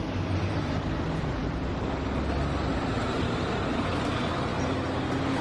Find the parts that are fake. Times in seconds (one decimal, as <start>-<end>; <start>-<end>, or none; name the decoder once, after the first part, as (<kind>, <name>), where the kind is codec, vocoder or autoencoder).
0.0-1.4 (vocoder, BigVGAN v2); 2.8-4.5